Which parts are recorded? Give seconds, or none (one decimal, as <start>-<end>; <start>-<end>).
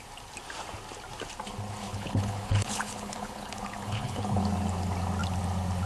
0.0-1.8; 4.4-5.9